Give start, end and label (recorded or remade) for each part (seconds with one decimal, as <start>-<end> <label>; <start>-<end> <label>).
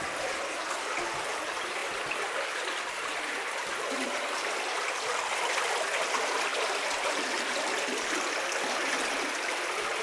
0.0-10.0 remade